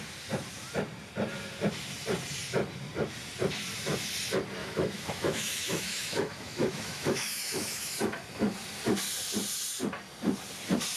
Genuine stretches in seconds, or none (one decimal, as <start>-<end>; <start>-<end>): 0.0-4.6; 8.2-11.0